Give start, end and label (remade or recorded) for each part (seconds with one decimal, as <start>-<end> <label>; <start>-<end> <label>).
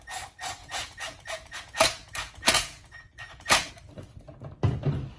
0.0-0.6 recorded; 0.6-3.7 remade; 3.7-5.2 recorded